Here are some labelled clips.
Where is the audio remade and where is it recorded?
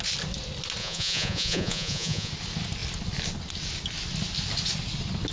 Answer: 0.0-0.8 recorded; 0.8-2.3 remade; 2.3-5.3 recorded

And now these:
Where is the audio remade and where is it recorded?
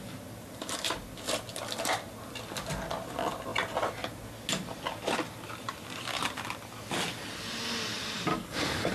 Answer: 0.0-8.3 recorded; 8.3-8.9 remade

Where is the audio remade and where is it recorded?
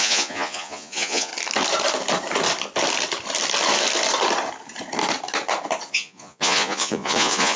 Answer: 0.0-1.3 remade; 1.3-5.9 recorded; 5.9-7.6 remade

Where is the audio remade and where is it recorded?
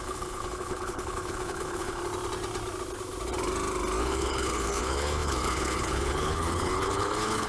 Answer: 0.0-2.0 remade; 2.0-4.0 recorded; 4.0-7.5 remade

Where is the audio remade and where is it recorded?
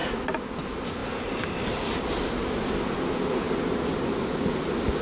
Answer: 0.0-5.0 recorded